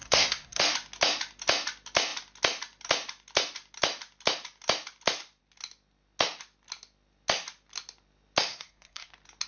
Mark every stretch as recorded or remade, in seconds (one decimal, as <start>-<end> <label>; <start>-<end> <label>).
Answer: 0.0-0.6 remade; 0.6-8.5 recorded; 8.5-9.1 remade; 9.1-9.5 recorded